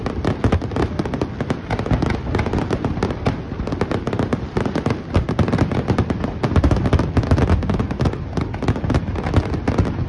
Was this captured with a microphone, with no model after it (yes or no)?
yes